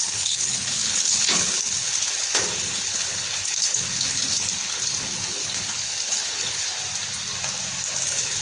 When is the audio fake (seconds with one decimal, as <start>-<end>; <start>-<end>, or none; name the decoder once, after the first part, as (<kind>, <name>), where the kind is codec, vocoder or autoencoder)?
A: 0.0-6.7 (codec, HILCodec); 7.9-8.4